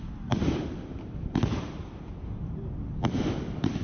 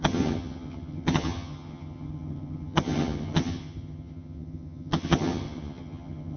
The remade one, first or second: second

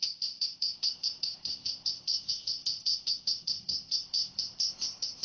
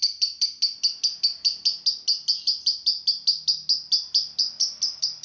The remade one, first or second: first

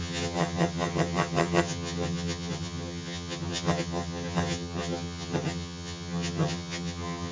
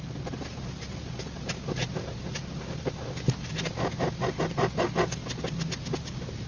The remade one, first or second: first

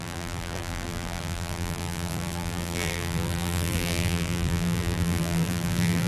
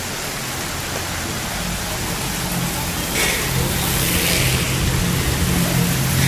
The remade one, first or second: first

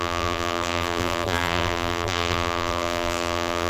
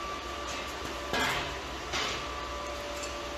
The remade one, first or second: first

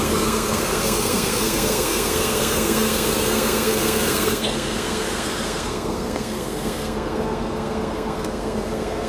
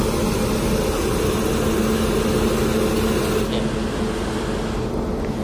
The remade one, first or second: first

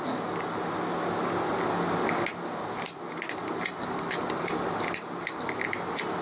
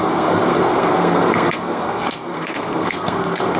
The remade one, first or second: second